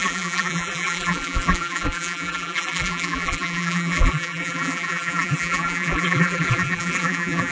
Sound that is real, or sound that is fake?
fake